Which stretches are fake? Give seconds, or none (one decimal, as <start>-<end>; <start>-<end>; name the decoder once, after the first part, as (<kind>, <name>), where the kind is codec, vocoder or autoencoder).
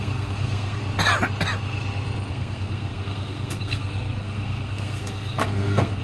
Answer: 0.0-0.8 (codec, SNAC); 2.3-6.0